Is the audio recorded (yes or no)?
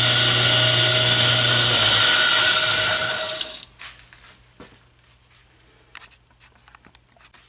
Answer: yes